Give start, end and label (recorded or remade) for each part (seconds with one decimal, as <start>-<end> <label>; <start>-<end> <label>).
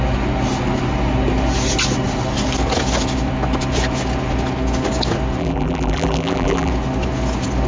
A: 0.0-5.4 recorded; 5.4-6.7 remade; 6.7-7.7 recorded